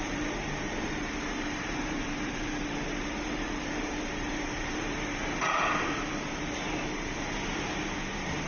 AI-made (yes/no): yes